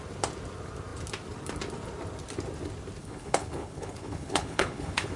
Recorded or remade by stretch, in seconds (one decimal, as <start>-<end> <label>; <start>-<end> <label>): 0.0-3.0 recorded; 3.0-5.2 remade